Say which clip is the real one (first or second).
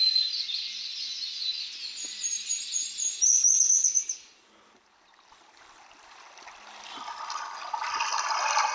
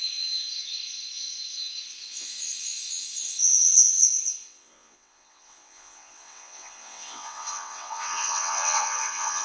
first